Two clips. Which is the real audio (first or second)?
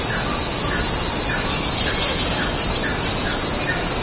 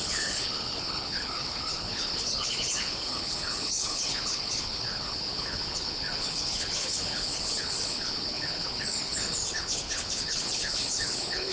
first